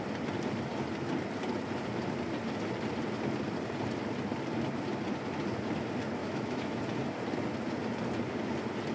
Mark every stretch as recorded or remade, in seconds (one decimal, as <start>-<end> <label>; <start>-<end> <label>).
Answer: 0.0-6.2 recorded; 6.2-6.8 remade; 6.8-8.9 recorded